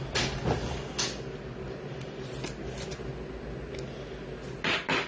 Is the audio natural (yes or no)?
yes